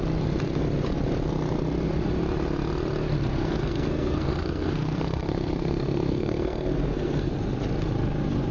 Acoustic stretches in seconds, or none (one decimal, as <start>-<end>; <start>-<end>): 0.0-3.3; 7.3-8.5